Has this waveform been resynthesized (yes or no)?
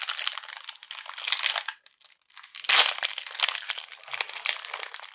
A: no